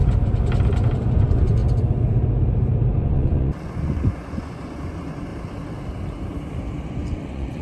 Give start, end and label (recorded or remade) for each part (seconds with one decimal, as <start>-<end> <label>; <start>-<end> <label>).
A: 0.0-1.2 recorded; 1.2-1.6 remade; 1.6-3.0 recorded; 3.0-5.3 remade; 5.3-6.9 recorded; 6.9-7.6 remade